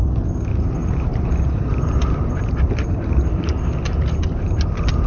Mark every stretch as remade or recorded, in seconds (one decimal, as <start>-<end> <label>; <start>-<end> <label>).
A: 0.0-0.8 recorded; 0.8-3.4 remade; 3.4-5.1 recorded